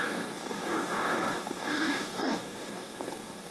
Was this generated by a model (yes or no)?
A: yes